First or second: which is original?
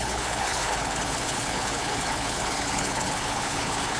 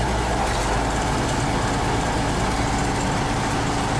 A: second